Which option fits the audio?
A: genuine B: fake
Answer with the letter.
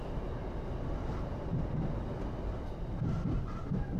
A